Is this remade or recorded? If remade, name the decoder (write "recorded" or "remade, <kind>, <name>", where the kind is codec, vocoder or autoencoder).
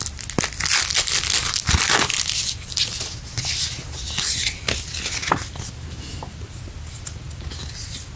recorded